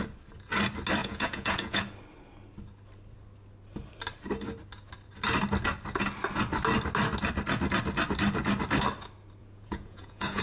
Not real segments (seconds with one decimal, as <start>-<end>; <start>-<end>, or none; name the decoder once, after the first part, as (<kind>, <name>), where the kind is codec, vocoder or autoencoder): 1.0-1.8 (vocoder, Vocos); 9.4-10.4